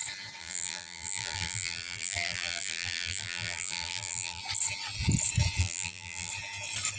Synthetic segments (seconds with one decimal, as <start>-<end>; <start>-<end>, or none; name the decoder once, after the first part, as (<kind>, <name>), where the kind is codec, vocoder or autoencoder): 0.4-4.4 (vocoder, BigVGAN v2); 5.6-6.3